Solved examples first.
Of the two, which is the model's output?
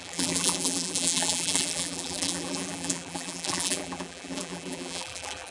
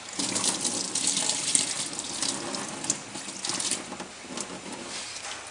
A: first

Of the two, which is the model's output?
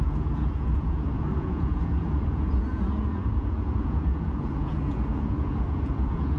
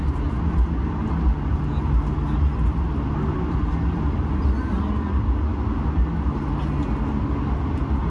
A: first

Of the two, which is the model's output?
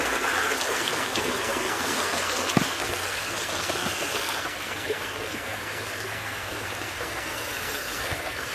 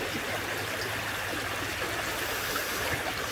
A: first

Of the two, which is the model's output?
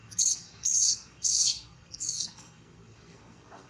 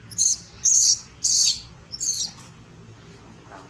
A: first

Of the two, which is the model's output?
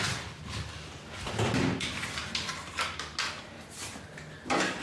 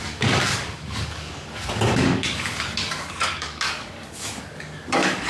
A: second